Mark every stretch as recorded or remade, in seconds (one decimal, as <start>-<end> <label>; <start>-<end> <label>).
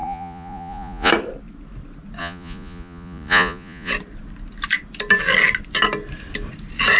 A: 0.0-1.1 remade; 1.1-2.2 recorded; 2.2-3.9 remade; 3.9-7.0 recorded